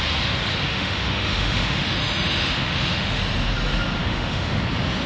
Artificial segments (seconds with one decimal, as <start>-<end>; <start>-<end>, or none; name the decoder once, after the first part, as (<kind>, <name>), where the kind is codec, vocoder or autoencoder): 0.7-3.2 (autoencoder, DAC-VAE); 4.0-4.6